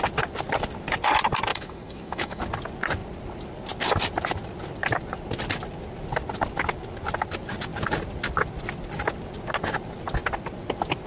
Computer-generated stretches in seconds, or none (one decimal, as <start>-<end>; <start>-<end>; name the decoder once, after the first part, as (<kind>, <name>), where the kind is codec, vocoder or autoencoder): 1.5-2.4 (autoencoder, DAC-VAE)